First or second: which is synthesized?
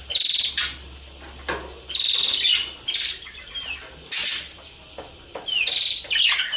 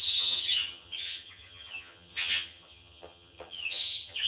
second